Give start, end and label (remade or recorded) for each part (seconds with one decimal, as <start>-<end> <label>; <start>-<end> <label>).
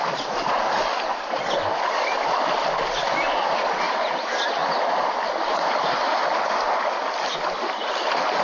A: 0.0-8.4 recorded